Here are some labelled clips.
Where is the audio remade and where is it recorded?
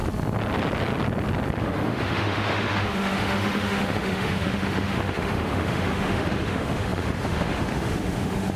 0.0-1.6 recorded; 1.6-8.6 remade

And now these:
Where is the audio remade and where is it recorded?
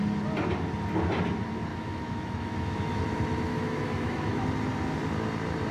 0.0-1.7 recorded; 1.7-3.0 remade; 3.0-3.5 recorded; 3.5-4.4 remade; 4.4-5.7 recorded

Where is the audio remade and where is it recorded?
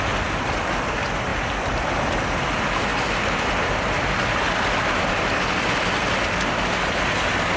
0.0-7.6 recorded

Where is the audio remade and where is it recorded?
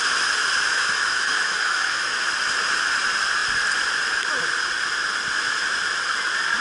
0.0-0.7 recorded; 0.7-2.3 remade; 2.3-6.6 recorded